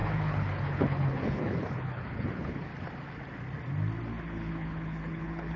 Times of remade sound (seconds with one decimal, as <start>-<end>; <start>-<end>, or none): 0.0-2.7; 4.2-5.6